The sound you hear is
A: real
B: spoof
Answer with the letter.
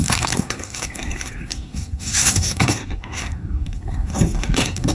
B